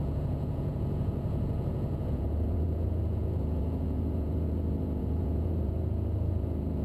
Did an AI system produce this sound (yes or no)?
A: yes